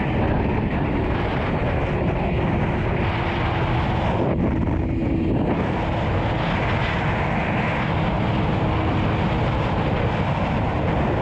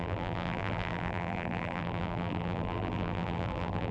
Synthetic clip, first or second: second